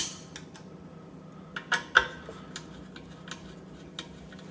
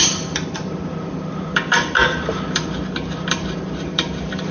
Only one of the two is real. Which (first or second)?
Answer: first